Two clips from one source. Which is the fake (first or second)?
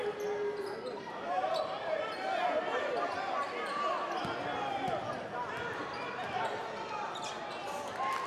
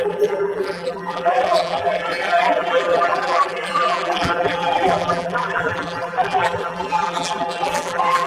second